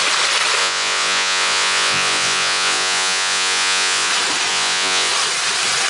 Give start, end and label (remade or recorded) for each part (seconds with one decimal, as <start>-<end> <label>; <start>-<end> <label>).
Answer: 0.0-0.6 recorded; 0.6-4.1 remade; 4.1-4.5 recorded; 4.5-5.1 remade; 5.1-5.9 recorded